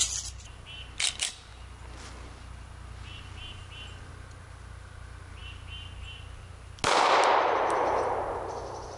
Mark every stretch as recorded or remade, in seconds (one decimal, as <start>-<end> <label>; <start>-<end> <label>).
0.0-9.0 recorded

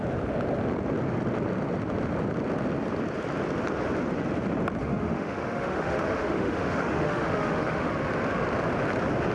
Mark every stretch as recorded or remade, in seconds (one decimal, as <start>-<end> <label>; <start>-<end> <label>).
0.0-4.8 recorded; 4.8-7.9 remade; 7.9-9.3 recorded

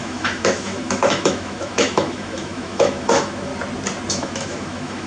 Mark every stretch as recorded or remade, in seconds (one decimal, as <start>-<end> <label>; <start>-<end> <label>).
0.0-3.5 remade; 3.5-4.1 recorded; 4.1-5.1 remade

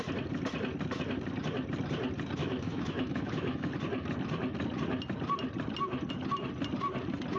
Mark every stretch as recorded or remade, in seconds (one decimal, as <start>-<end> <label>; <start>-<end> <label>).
0.0-2.4 recorded; 2.4-3.7 remade; 3.7-7.4 recorded